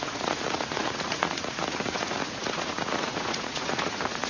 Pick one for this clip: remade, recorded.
remade